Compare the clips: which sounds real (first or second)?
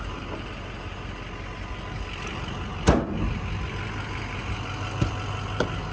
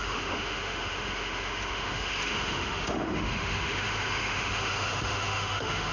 first